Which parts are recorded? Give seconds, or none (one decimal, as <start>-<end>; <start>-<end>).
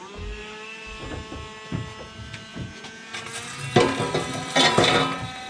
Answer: 0.0-2.5; 3.1-5.5